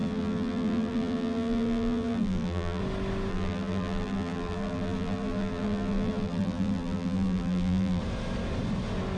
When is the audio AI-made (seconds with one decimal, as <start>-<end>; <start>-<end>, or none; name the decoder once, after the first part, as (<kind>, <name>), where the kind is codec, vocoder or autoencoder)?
0.0-2.8 (vocoder, BigVGAN v2); 3.3-8.0